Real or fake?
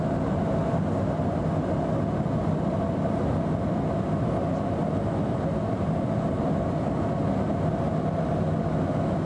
real